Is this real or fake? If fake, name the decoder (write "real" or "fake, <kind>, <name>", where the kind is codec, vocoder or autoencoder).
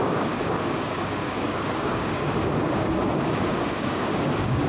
fake, codec, DAC